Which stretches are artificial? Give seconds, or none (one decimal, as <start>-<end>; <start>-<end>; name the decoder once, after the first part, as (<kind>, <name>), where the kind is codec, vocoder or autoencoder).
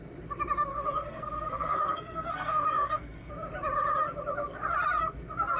0.7-3.3 (codec, SNAC)